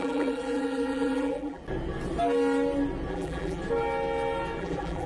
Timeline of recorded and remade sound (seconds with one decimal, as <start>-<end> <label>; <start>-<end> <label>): 0.0-1.6 remade; 1.6-3.1 recorded; 3.1-3.6 remade; 3.6-4.6 recorded; 4.6-5.1 remade